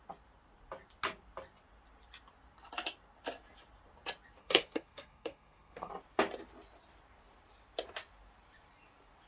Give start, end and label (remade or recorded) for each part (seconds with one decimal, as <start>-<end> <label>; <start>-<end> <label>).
0.0-4.4 recorded; 4.4-5.9 remade; 5.9-9.3 recorded